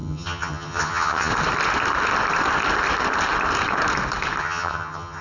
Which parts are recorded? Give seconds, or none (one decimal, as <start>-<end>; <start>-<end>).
1.3-4.4